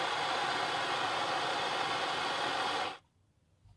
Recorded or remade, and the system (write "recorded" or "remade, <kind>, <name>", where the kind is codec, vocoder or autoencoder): recorded